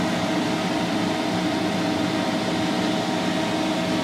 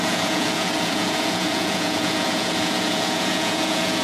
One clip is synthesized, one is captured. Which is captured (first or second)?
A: first